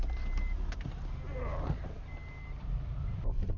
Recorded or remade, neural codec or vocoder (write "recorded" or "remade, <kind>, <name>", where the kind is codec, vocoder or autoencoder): recorded